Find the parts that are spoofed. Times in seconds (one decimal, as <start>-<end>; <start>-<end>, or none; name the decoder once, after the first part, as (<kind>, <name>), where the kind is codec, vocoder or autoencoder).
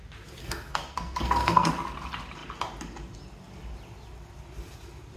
0.4-1.7 (codec, SNAC)